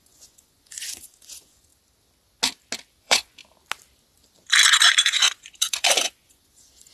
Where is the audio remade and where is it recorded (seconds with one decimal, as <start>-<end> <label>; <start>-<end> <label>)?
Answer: 0.0-1.7 remade; 1.7-3.0 recorded; 3.0-3.4 remade; 3.4-4.7 recorded; 4.7-6.9 remade

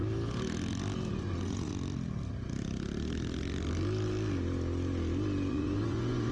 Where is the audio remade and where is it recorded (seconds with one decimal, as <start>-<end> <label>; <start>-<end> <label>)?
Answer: 0.0-1.1 recorded; 1.1-1.7 remade; 1.7-5.5 recorded; 5.5-6.3 remade

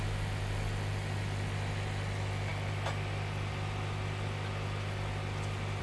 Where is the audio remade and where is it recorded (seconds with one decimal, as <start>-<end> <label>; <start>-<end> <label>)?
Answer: 0.0-5.8 recorded

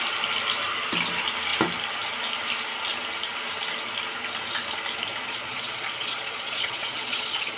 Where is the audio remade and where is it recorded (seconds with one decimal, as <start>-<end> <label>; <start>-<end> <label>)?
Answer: 0.0-5.1 recorded; 5.1-7.6 remade